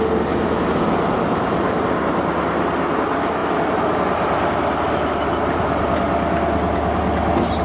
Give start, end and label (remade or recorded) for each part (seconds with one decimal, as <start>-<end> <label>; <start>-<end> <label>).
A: 0.0-7.6 recorded

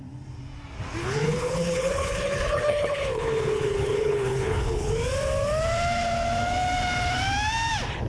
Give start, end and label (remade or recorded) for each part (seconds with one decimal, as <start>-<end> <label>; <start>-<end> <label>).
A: 0.0-1.0 recorded; 1.0-4.9 remade; 4.9-8.1 recorded